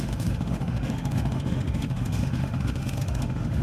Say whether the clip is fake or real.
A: fake